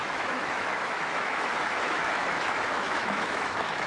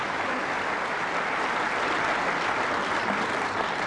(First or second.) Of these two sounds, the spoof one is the first